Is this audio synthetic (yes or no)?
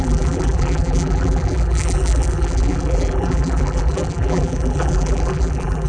yes